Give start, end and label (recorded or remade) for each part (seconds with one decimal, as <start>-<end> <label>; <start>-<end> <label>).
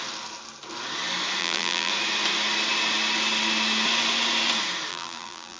0.0-1.4 recorded; 1.4-1.9 remade; 1.9-4.9 recorded; 4.9-5.6 remade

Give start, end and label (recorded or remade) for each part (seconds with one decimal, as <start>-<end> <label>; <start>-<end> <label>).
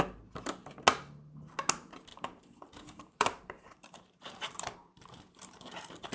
0.0-2.1 recorded; 2.1-6.1 remade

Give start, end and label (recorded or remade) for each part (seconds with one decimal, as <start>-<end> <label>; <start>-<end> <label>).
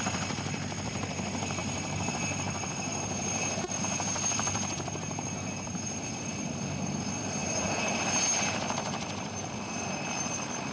0.0-1.6 remade; 1.6-2.1 recorded; 2.1-10.7 remade